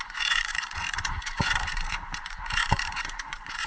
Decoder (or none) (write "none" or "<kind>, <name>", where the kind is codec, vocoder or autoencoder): vocoder, Vocos